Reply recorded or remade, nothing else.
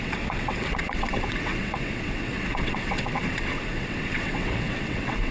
remade